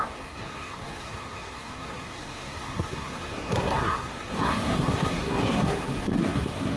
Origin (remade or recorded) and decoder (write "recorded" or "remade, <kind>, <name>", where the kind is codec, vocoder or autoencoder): remade, codec, SNAC